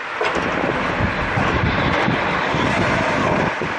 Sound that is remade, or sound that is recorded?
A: recorded